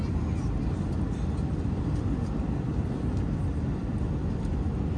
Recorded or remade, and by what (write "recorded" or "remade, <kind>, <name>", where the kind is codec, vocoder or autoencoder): recorded